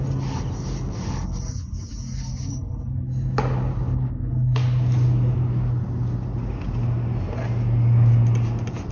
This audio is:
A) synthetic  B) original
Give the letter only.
B